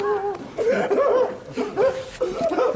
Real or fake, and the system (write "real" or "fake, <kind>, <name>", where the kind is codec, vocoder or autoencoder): real